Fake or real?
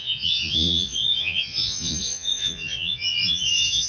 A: fake